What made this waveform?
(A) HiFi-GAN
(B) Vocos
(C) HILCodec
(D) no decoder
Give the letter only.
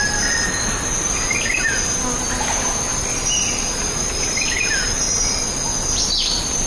D